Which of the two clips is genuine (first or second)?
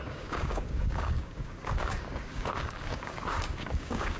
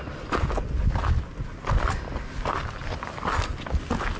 second